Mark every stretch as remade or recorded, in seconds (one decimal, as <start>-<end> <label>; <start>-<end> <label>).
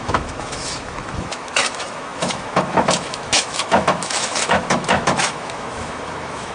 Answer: 0.0-6.5 remade